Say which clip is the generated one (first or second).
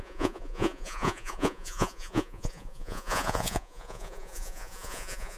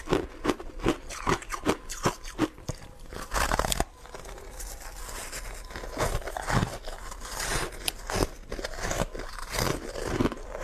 first